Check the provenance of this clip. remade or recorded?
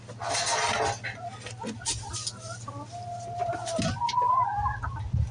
recorded